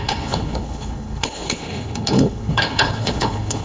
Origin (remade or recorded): remade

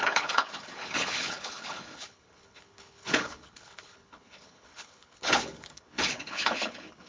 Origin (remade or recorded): remade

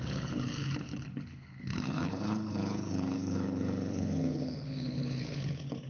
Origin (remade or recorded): remade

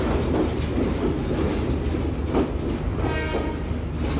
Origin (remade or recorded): recorded